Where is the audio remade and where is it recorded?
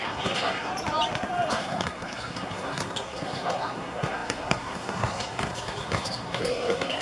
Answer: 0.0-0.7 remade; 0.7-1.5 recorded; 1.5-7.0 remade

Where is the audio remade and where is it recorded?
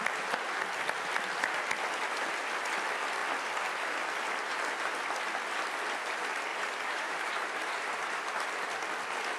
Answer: 0.0-6.5 recorded; 6.5-8.3 remade; 8.3-9.4 recorded